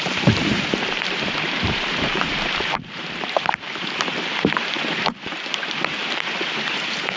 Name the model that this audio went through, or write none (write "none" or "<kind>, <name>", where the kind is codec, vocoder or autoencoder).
vocoder, BigVGAN v2